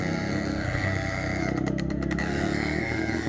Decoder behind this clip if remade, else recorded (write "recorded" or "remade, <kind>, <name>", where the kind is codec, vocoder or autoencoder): remade, codec, SNAC